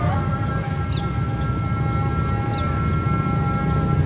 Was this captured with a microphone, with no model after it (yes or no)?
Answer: yes